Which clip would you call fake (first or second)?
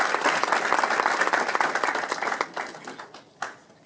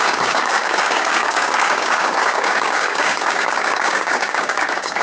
second